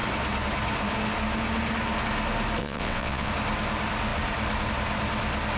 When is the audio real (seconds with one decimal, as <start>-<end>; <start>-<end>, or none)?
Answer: 0.0-2.6; 3.3-5.6